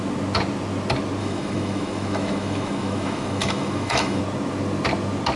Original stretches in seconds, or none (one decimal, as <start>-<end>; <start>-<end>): 0.0-1.2; 4.2-5.4